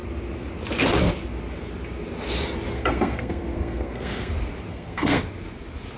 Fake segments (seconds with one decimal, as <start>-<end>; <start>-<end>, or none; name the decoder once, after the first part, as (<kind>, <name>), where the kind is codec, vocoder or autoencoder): 2.7-4.3 (codec, SNAC); 4.7-5.2